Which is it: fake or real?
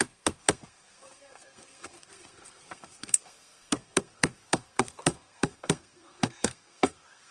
fake